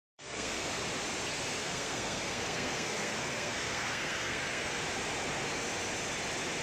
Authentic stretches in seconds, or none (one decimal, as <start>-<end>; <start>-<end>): 0.8-1.6; 4.8-6.6